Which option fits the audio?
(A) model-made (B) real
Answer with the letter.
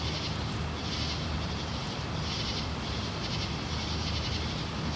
B